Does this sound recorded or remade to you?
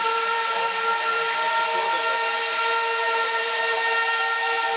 remade